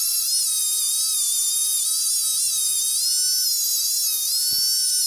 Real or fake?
real